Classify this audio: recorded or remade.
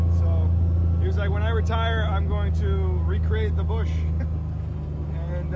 recorded